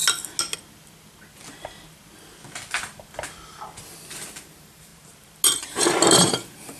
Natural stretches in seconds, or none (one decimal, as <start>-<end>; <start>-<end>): 0.0-4.1; 4.9-5.6